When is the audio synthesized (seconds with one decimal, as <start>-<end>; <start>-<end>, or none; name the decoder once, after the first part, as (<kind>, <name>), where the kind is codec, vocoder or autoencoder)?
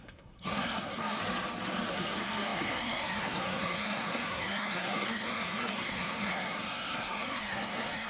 0.0-1.2 (codec, SNAC); 1.9-8.1